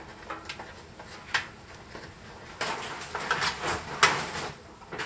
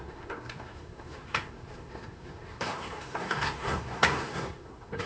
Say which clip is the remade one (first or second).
second